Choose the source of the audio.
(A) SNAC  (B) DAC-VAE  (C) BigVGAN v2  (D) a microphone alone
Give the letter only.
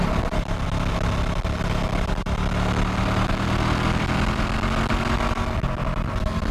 D